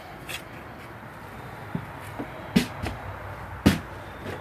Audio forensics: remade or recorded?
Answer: recorded